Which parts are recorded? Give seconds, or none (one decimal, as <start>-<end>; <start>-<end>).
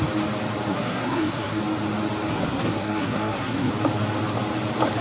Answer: 0.0-0.7; 1.6-2.3; 3.7-5.0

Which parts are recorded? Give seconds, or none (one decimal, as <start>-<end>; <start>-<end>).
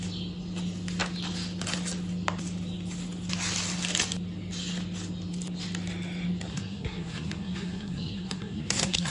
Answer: 0.0-6.5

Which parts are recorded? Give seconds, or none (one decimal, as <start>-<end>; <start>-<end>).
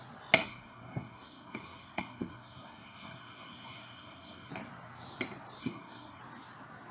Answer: 0.0-0.4; 4.5-5.6; 6.2-6.9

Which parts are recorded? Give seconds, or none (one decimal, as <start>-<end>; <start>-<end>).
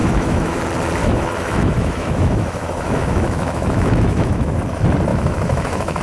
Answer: 0.6-1.0; 4.6-5.1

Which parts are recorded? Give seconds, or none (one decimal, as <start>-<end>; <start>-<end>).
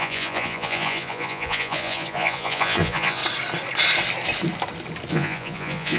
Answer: 3.2-5.1